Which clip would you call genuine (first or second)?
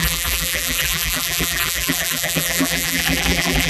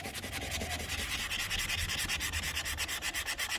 second